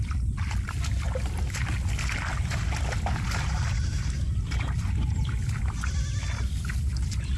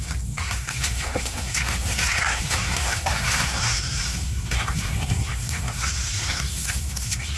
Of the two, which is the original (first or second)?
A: first